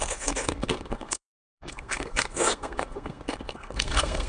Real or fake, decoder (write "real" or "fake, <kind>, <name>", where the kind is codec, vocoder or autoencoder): fake, codec, SNAC